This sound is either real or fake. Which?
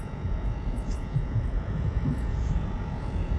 fake